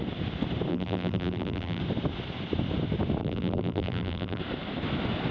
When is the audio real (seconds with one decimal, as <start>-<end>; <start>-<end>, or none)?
0.0-0.7; 1.8-3.2; 4.4-5.3